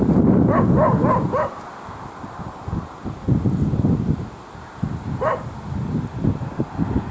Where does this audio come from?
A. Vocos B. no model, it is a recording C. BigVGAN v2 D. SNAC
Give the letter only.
B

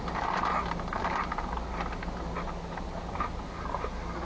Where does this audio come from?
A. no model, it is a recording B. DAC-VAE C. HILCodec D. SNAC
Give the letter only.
A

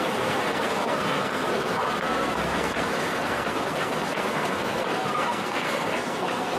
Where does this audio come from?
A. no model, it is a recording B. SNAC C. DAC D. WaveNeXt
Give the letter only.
B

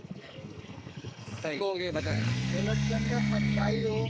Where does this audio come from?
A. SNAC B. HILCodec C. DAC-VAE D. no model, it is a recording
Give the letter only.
A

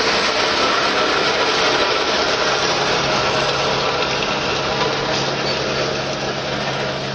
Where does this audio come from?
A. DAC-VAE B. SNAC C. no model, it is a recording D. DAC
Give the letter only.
C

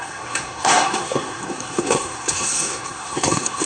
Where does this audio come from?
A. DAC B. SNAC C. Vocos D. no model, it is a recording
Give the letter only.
B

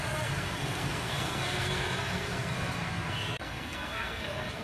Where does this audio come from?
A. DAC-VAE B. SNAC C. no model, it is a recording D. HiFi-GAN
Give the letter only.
B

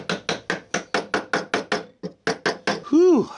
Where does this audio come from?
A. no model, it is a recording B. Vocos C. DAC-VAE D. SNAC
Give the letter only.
A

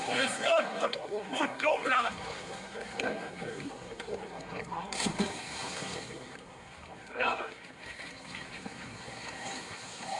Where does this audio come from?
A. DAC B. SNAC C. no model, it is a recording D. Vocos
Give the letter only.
B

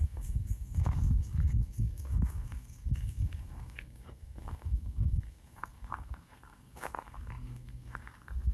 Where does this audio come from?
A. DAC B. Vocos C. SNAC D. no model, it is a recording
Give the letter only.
C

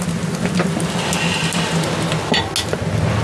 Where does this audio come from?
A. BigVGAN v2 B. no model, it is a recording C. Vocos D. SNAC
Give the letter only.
B